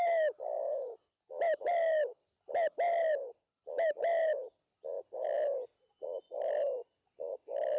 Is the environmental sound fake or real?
real